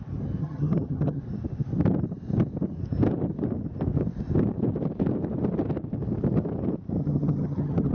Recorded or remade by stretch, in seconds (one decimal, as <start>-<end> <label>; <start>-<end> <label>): 0.0-0.4 recorded; 0.4-1.2 remade; 1.2-7.0 recorded; 7.0-7.9 remade